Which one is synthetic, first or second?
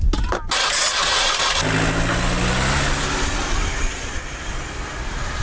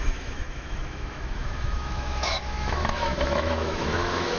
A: second